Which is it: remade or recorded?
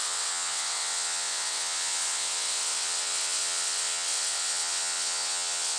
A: remade